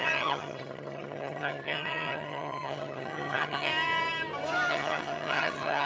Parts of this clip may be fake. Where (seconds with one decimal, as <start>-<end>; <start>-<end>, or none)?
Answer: 0.0-3.7; 4.7-5.9